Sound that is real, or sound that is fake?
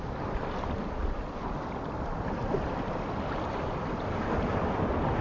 real